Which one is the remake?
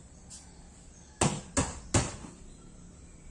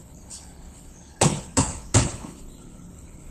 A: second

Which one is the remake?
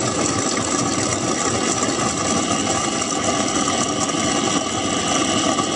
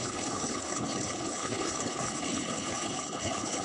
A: second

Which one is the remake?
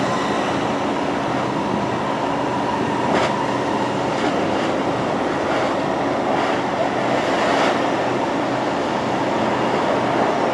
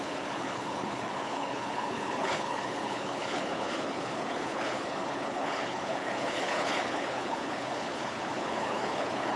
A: second